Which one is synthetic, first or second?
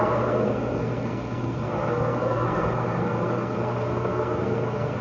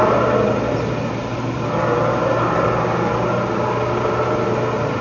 first